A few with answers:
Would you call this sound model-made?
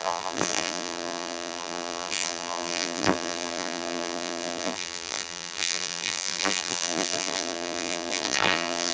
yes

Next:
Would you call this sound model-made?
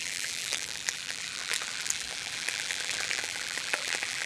yes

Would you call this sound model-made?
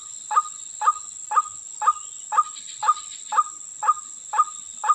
no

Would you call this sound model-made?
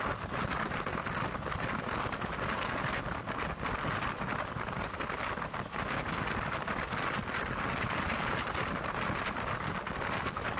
no